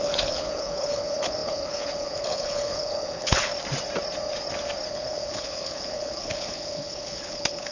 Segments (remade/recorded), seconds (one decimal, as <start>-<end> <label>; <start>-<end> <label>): 0.0-3.5 remade; 3.5-4.9 recorded; 4.9-7.7 remade